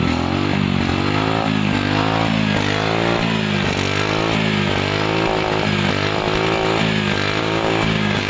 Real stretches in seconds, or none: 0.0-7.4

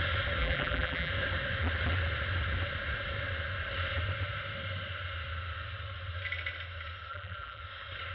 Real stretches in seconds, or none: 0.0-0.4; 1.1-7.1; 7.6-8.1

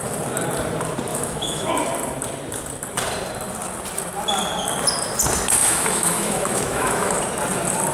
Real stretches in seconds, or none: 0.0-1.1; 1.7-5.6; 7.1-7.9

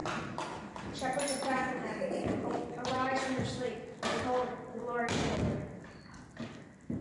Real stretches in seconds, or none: 0.0-7.0

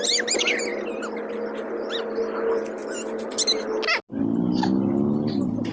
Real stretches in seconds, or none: 0.0-5.7